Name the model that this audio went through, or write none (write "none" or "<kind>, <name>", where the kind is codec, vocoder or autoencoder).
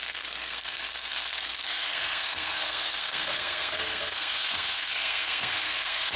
codec, SNAC